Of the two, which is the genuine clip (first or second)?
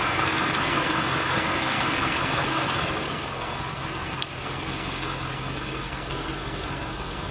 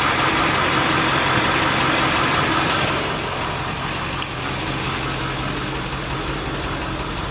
second